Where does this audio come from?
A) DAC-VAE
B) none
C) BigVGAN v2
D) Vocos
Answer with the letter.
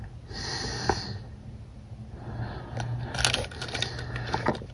B